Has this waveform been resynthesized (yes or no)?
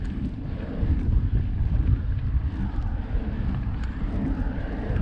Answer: no